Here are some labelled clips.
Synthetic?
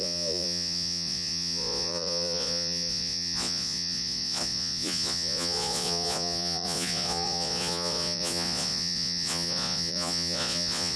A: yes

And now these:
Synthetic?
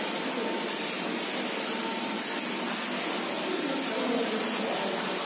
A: no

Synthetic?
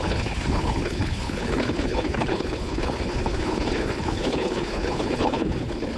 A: yes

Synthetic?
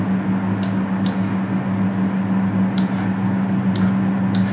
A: no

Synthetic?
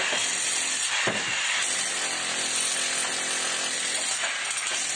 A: no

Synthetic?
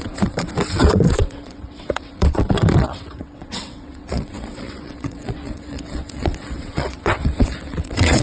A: yes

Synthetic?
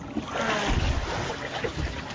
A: no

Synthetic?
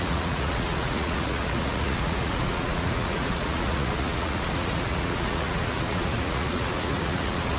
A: yes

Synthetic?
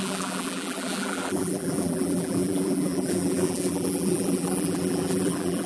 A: yes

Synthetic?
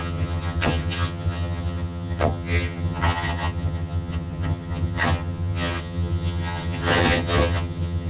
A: yes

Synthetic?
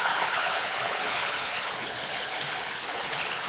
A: yes